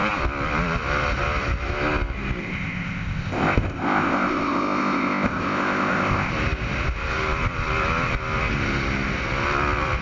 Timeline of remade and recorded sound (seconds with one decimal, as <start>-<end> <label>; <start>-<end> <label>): 0.0-2.4 recorded; 2.4-6.3 remade; 6.3-10.0 recorded